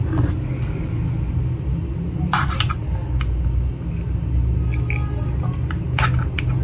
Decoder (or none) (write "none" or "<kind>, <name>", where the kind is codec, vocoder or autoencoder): none